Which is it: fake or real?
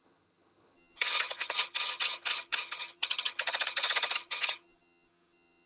fake